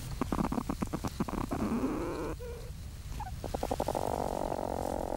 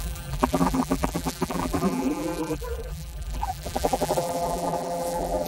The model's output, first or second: second